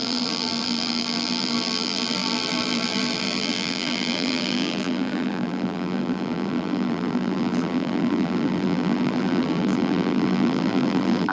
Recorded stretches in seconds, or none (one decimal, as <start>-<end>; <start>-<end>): none